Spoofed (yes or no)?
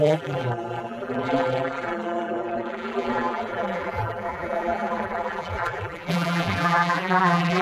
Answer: yes